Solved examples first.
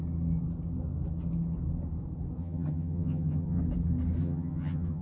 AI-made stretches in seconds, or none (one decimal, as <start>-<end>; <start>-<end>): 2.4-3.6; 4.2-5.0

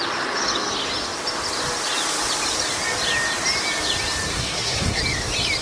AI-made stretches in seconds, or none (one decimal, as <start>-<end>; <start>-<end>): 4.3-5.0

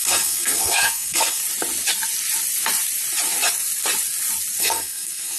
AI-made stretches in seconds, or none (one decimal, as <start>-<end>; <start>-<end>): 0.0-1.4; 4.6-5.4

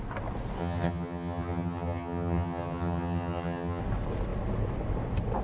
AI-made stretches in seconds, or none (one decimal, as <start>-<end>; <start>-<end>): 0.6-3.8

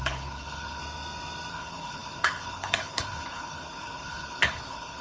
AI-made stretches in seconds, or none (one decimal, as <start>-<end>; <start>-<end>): 0.0-0.8; 1.5-5.0

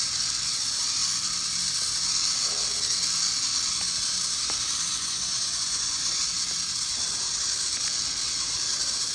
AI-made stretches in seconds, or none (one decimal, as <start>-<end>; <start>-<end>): 4.9-6.2